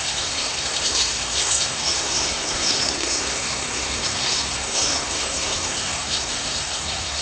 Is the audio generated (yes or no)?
yes